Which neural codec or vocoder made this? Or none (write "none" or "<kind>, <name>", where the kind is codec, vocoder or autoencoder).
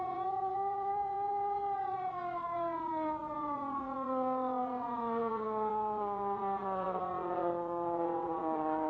vocoder, Vocos